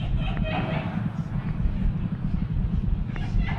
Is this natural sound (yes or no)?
yes